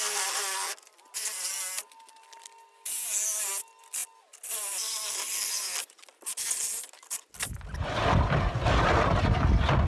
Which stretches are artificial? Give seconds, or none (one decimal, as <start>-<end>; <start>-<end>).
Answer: none